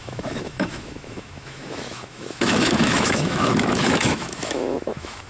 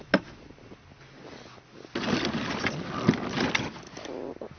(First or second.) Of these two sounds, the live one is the second